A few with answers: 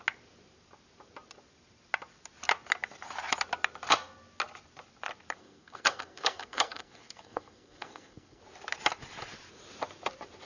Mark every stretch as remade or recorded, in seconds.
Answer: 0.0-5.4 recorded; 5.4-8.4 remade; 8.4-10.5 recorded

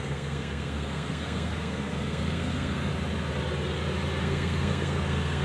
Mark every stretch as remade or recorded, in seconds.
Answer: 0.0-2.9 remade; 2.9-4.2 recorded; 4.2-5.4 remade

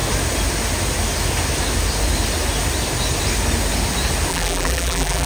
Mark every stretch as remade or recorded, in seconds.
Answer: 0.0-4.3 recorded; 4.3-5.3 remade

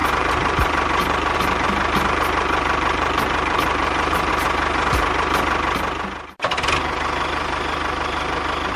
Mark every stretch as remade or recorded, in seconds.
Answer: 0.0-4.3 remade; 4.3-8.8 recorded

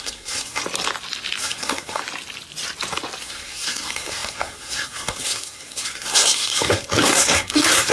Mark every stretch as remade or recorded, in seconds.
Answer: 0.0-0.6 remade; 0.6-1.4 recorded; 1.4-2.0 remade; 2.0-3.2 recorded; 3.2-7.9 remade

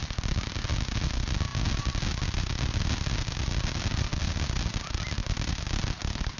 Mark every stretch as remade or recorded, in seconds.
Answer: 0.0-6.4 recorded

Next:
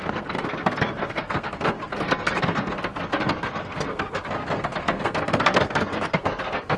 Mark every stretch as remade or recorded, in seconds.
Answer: 0.0-6.8 remade

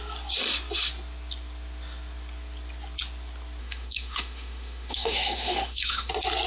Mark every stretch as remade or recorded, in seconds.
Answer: 0.0-3.6 recorded; 3.6-6.1 remade; 6.1-6.5 recorded